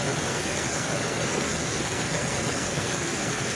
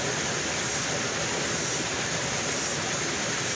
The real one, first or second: second